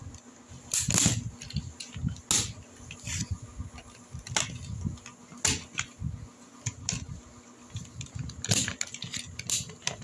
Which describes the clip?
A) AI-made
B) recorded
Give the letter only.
B